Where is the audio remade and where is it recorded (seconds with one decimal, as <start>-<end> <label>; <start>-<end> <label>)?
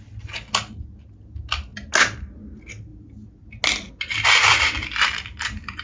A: 0.0-5.8 recorded